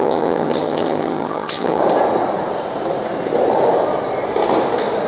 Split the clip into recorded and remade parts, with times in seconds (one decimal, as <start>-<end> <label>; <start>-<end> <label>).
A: 0.0-1.8 remade; 1.8-5.1 recorded

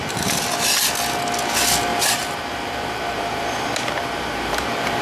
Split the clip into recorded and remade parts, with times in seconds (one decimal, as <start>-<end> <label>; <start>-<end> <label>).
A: 0.0-0.5 remade; 0.5-1.9 recorded; 1.9-5.0 remade

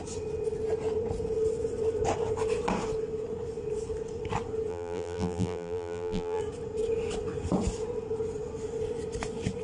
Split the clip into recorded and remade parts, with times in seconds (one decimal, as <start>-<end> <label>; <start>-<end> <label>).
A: 0.0-4.7 recorded; 4.7-6.4 remade; 6.4-9.6 recorded

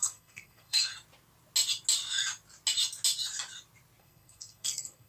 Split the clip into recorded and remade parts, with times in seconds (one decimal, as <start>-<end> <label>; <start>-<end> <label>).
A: 0.0-0.9 remade; 0.9-4.0 recorded; 4.0-5.1 remade

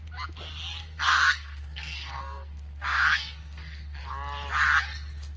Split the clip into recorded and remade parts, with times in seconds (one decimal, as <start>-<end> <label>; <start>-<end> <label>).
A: 0.0-0.8 recorded; 0.8-4.0 remade; 4.0-5.4 recorded